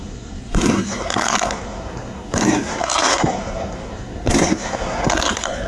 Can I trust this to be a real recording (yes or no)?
no